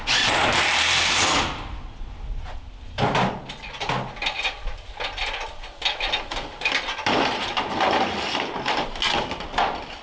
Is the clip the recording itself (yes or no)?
yes